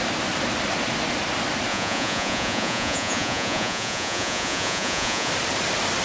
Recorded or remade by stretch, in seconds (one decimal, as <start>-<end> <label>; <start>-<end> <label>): 0.0-1.7 recorded; 1.7-5.3 remade; 5.3-6.0 recorded